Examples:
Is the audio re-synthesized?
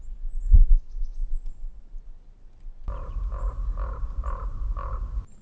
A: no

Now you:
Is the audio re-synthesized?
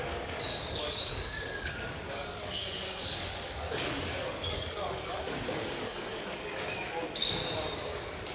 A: yes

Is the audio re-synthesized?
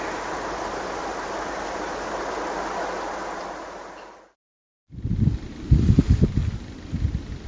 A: no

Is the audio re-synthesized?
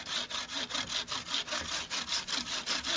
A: no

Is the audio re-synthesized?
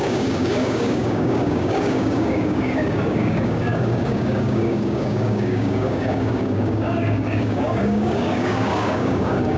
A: yes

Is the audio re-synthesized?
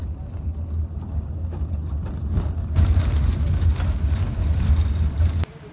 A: no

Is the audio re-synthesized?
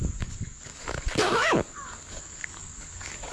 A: yes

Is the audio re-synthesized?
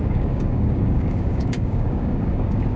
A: yes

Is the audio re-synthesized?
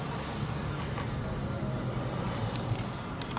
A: no